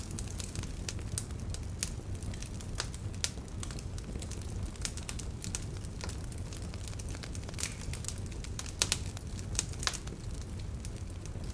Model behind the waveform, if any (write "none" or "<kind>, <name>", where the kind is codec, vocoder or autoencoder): none